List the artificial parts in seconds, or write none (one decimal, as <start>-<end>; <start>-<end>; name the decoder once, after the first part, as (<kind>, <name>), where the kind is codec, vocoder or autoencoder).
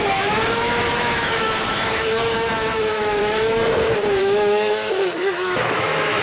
0.0-3.6 (autoencoder, DAC-VAE); 4.2-6.2